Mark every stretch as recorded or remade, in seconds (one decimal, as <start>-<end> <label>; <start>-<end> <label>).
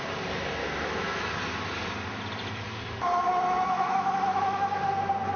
0.0-0.6 recorded; 0.6-1.3 remade; 1.3-3.3 recorded; 3.3-4.8 remade; 4.8-5.4 recorded